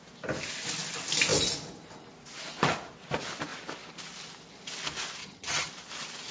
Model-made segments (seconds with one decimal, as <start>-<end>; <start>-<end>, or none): 5.2-5.7